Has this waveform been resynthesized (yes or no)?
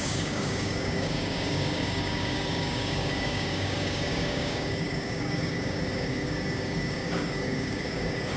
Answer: yes